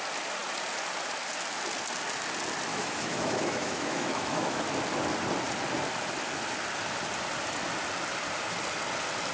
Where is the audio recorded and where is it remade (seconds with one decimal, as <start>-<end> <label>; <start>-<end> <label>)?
0.0-2.7 recorded; 2.7-4.6 remade; 4.6-9.3 recorded